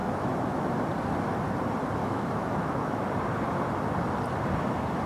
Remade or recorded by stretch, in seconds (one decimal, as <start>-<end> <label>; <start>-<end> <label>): 0.0-0.7 remade; 0.7-2.0 recorded; 2.0-3.0 remade; 3.0-5.1 recorded